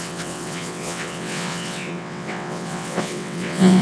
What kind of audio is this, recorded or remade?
remade